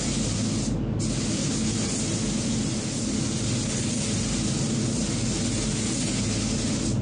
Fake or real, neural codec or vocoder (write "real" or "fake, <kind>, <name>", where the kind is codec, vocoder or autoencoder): real